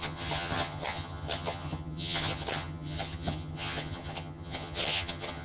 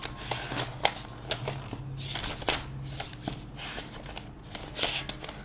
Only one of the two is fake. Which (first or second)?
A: first